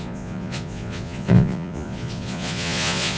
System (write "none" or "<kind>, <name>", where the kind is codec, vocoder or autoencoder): vocoder, Vocos